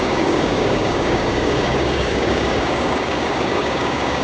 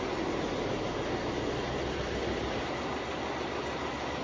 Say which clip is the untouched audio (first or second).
second